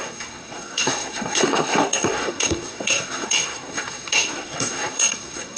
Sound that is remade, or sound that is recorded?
remade